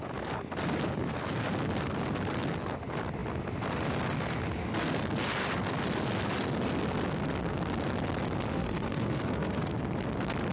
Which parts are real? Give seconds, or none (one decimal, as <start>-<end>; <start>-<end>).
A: 0.0-8.5; 9.6-10.5